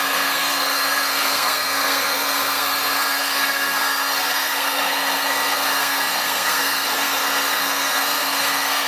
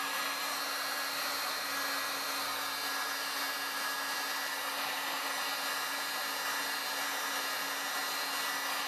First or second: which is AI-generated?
first